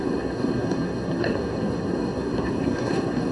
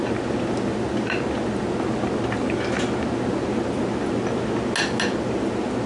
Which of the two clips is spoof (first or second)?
first